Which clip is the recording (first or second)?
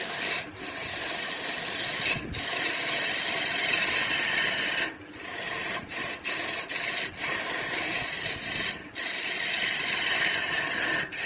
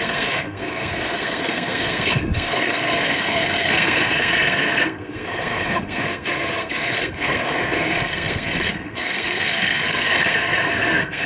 first